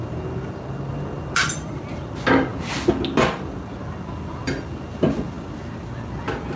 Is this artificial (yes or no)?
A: no